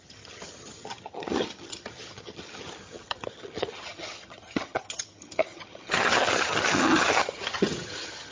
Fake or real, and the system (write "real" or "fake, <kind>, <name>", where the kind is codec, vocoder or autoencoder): fake, vocoder, HiFi-GAN